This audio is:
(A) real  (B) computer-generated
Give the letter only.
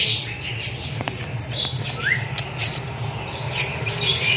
A